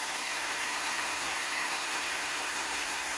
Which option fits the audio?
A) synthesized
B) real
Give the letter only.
A